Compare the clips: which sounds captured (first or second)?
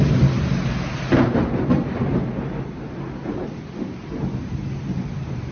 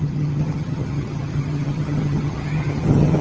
first